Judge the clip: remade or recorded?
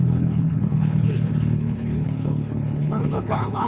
remade